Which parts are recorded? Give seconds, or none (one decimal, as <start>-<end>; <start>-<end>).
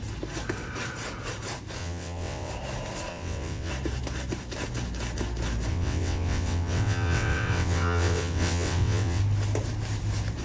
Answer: 0.0-1.8; 2.5-3.1; 3.7-5.7; 9.2-10.4